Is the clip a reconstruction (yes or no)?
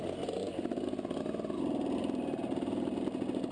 no